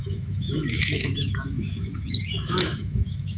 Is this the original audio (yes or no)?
no